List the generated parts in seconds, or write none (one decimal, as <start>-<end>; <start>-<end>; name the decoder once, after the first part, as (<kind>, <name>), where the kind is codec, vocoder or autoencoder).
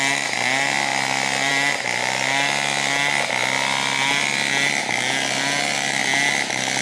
none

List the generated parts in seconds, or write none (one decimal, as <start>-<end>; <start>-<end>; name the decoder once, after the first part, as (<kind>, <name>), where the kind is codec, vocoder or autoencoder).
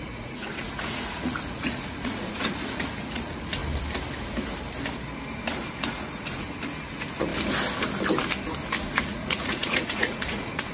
0.0-3.6 (vocoder, Vocos); 5.9-7.3; 8.8-10.7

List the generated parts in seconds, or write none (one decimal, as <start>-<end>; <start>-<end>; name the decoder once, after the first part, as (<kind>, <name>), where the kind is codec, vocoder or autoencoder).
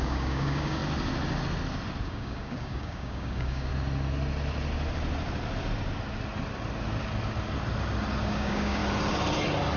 0.0-0.8 (codec, DAC); 2.0-3.7; 8.3-8.8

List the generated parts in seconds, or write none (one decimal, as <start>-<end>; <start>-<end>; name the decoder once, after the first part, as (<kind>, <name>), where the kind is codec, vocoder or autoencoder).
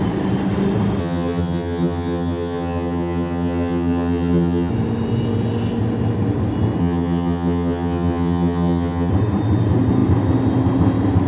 1.0-4.7 (vocoder, HiFi-GAN); 6.8-9.1